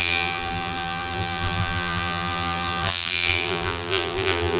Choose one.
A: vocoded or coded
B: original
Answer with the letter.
A